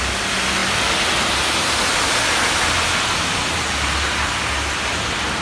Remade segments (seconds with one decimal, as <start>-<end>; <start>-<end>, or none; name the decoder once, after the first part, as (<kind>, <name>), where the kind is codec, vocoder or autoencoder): none